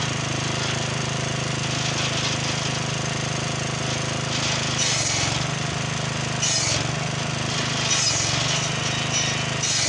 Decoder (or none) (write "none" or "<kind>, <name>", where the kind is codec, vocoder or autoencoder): none